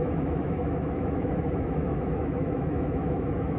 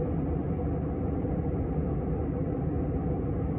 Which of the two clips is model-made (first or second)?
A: first